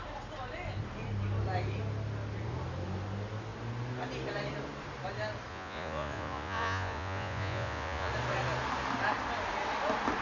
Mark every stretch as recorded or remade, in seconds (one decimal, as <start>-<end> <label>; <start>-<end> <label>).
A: 0.0-5.5 recorded; 5.5-8.1 remade; 8.1-10.2 recorded